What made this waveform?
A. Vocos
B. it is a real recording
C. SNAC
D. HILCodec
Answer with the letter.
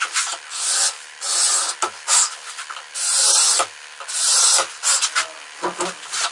B